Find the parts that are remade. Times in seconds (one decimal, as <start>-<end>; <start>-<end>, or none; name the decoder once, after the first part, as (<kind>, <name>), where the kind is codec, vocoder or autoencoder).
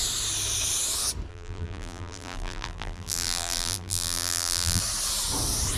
1.3-4.8 (vocoder, BigVGAN v2)